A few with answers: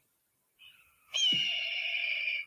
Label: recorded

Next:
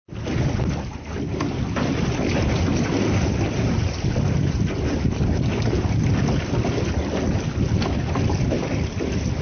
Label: recorded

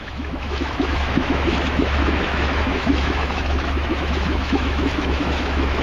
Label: remade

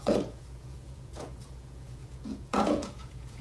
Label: remade